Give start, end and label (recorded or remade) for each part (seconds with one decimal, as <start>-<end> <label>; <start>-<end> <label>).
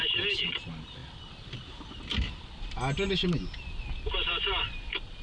0.0-5.2 recorded